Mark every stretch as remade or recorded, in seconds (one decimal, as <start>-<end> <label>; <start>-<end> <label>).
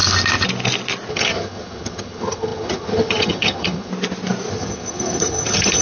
0.0-1.1 recorded; 1.1-3.9 remade; 3.9-4.5 recorded; 4.5-5.8 remade